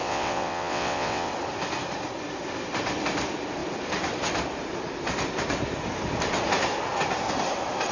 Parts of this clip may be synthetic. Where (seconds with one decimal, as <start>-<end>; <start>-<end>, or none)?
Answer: 0.0-1.3